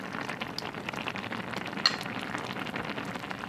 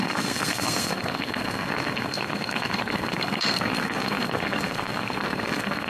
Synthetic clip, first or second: second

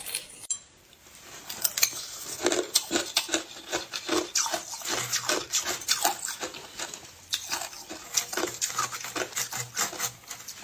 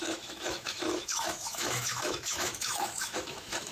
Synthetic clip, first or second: second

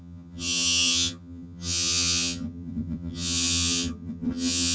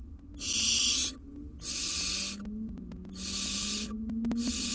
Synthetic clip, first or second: first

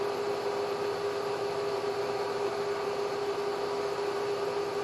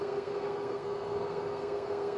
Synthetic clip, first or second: second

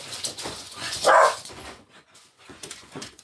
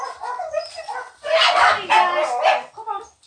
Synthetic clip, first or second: first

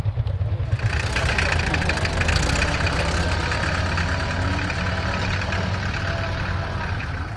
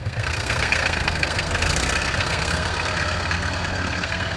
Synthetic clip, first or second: second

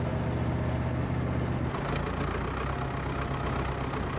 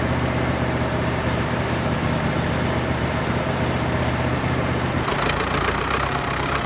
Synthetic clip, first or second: second